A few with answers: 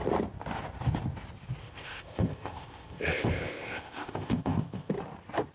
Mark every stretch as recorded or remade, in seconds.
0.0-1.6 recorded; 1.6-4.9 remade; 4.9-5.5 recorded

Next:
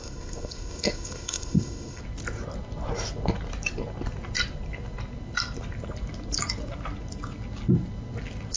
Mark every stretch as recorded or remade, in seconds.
0.0-2.0 remade; 2.0-8.6 recorded